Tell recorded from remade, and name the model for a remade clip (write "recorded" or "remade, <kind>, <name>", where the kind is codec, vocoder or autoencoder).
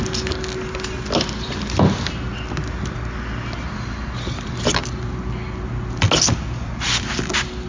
recorded